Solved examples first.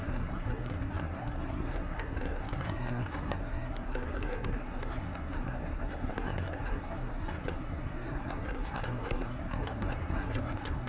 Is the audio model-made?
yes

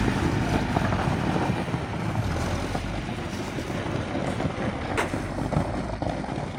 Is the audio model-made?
yes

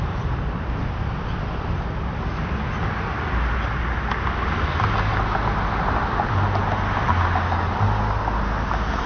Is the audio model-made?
no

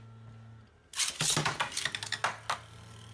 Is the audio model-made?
no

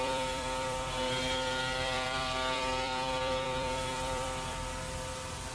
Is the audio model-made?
yes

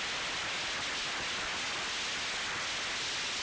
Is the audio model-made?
no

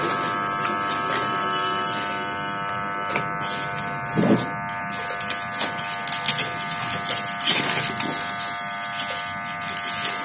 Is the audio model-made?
no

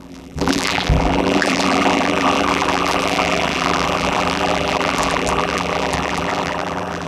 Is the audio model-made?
yes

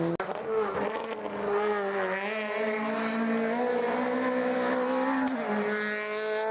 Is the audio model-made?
no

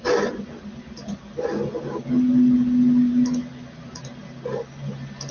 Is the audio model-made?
no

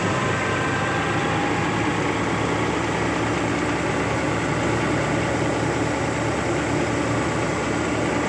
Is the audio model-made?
no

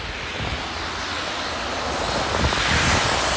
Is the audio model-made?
no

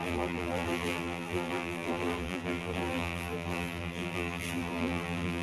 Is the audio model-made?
yes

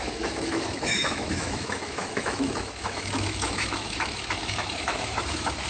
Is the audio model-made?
yes